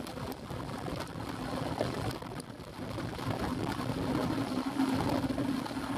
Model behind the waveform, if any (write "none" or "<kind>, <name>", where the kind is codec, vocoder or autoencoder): none